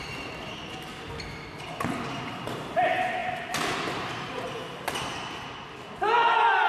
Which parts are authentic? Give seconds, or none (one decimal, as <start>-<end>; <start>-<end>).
0.0-6.7

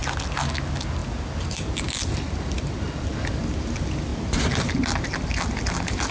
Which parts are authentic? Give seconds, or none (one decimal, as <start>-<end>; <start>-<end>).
0.0-6.1

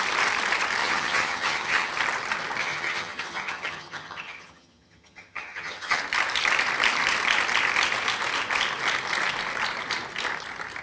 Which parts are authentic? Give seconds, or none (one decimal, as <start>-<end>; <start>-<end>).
0.0-0.8; 1.9-2.6; 6.0-10.8

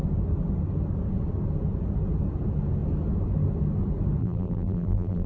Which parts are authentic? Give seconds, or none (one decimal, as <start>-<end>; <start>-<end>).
0.0-4.2

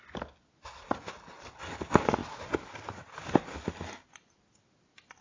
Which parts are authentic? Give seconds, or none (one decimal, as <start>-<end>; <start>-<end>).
0.0-5.2

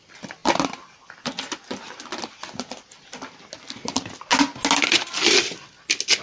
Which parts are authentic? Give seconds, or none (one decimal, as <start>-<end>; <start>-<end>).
0.0-6.2